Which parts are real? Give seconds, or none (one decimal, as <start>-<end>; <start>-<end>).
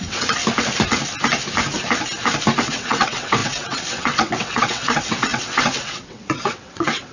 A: 0.4-2.7